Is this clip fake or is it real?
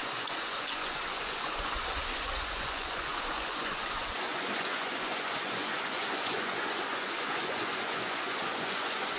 fake